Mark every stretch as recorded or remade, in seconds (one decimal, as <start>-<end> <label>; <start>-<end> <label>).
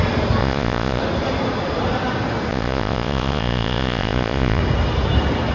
0.0-0.4 recorded; 0.4-1.0 remade; 1.0-2.5 recorded; 2.5-4.6 remade; 4.6-5.5 recorded